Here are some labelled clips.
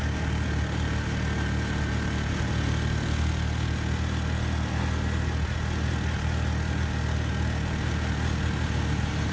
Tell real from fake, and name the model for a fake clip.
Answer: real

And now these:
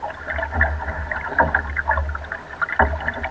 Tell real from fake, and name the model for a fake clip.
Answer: real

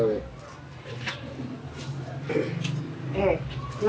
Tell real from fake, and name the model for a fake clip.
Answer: real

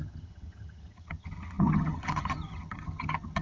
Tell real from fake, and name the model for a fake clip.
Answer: fake, vocoder, HiFi-GAN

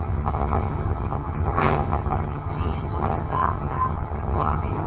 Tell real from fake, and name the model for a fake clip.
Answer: fake, vocoder, HiFi-GAN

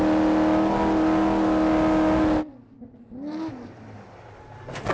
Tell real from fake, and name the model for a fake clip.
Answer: real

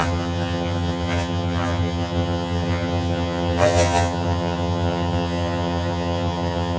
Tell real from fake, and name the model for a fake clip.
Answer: fake, vocoder, HiFi-GAN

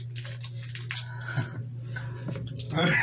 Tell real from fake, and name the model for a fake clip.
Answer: real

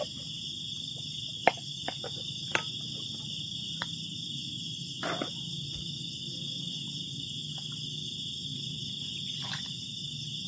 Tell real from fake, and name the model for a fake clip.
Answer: real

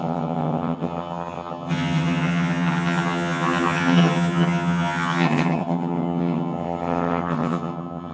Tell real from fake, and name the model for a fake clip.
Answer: fake, vocoder, HiFi-GAN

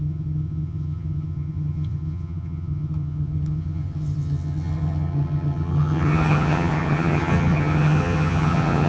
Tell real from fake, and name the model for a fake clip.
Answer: fake, vocoder, HiFi-GAN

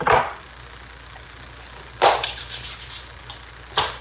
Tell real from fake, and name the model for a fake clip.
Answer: real